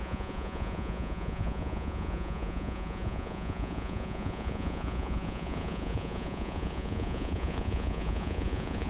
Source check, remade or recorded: remade